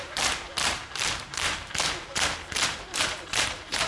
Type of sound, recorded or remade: remade